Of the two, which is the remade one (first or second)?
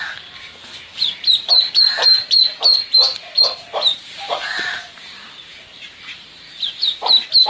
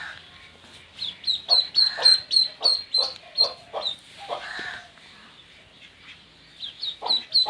first